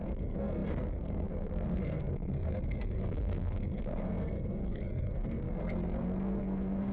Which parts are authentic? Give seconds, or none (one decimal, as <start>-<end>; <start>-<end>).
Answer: none